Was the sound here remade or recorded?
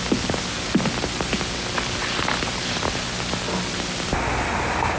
recorded